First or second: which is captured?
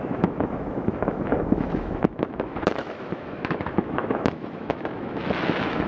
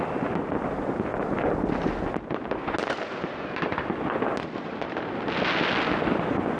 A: second